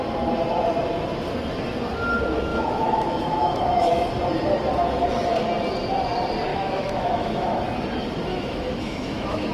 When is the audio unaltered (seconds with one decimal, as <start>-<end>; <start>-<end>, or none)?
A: 0.0-2.5; 4.1-6.5; 7.6-8.3